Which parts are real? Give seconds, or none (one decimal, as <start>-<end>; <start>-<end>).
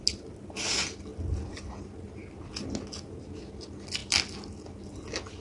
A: 0.0-5.4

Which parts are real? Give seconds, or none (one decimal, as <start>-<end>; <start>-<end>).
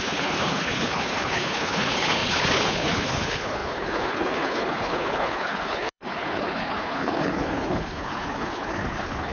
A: none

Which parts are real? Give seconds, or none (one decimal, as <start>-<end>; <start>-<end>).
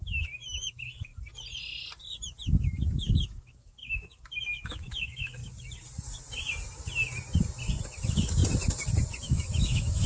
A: 1.1-2.9; 5.4-8.0; 8.4-9.2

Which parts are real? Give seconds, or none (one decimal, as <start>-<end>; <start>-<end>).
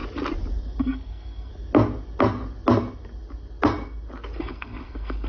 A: 0.0-0.8; 1.5-4.4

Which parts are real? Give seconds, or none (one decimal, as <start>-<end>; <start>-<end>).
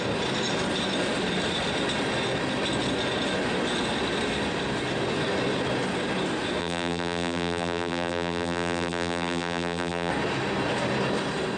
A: 0.0-6.6; 10.1-11.6